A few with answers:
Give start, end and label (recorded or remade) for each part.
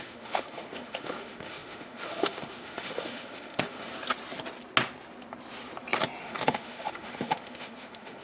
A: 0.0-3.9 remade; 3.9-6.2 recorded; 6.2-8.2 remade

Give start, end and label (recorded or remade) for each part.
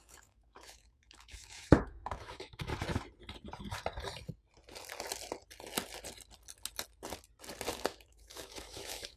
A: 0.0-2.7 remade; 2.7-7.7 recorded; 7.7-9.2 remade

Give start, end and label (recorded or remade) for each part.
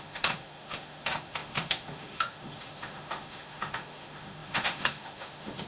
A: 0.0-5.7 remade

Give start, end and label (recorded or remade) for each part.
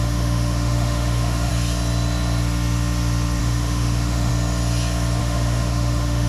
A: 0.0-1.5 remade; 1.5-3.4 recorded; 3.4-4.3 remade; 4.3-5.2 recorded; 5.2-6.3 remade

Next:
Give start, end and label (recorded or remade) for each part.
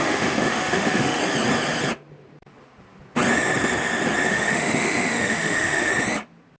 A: 0.0-1.2 remade; 1.2-4.3 recorded; 4.3-5.9 remade; 5.9-6.6 recorded